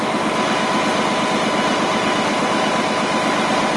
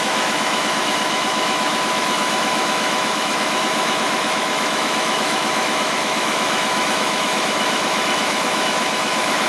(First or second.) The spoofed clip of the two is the second